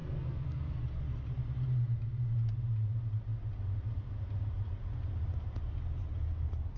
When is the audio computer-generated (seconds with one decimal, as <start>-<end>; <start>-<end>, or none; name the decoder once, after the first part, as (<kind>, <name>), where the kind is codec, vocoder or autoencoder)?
0.0-0.8 (codec, SNAC)